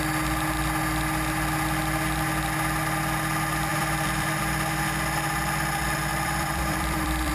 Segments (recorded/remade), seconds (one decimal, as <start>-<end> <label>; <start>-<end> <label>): 0.0-3.7 recorded; 3.7-4.4 remade; 4.4-6.1 recorded; 6.1-7.3 remade